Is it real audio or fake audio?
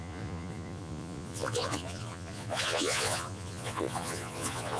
fake